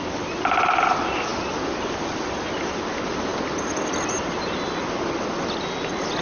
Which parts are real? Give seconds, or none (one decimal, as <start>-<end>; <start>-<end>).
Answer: 0.0-6.2